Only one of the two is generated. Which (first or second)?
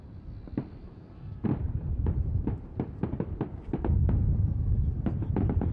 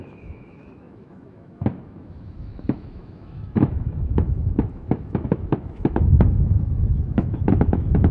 second